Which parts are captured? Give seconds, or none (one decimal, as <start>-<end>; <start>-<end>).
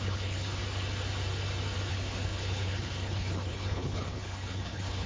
0.6-1.9